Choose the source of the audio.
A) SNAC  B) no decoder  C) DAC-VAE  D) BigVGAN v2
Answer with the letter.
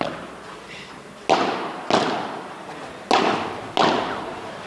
B